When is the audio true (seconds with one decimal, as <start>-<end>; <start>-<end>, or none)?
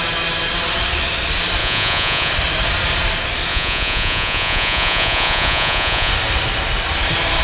0.0-1.6; 2.3-3.5; 6.1-7.4